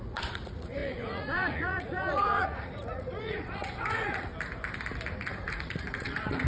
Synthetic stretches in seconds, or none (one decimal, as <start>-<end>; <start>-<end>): 0.0-4.3; 5.2-6.5